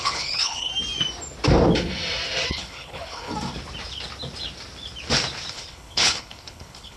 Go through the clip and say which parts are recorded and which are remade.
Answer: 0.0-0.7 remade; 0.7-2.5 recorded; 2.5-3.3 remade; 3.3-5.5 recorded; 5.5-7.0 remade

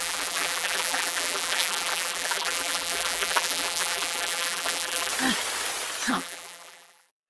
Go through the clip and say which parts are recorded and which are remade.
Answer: 0.0-5.1 remade; 5.1-6.1 recorded; 6.1-7.3 remade

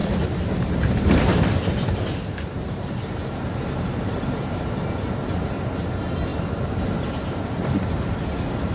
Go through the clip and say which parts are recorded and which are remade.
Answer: 0.0-4.7 remade; 4.7-6.3 recorded; 6.3-7.1 remade; 7.1-8.7 recorded

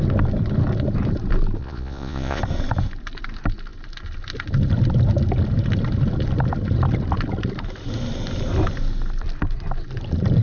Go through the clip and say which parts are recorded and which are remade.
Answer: 0.0-1.6 recorded; 1.6-2.4 remade; 2.4-10.4 recorded

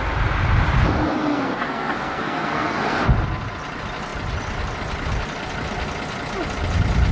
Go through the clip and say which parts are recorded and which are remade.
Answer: 0.0-1.1 recorded; 1.1-3.0 remade; 3.0-7.1 recorded

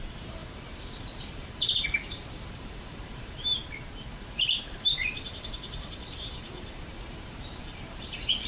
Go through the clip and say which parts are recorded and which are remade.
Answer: 0.0-0.4 remade; 0.4-1.0 recorded; 1.0-3.6 remade; 3.6-4.6 recorded; 4.6-8.5 remade

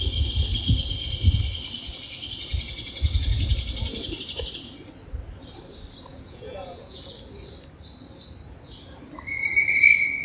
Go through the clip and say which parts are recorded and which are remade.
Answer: 0.0-6.1 recorded; 6.1-7.0 remade; 7.0-10.2 recorded

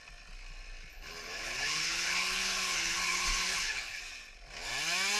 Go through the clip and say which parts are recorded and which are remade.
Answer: 0.0-0.9 recorded; 0.9-4.0 remade; 4.0-5.2 recorded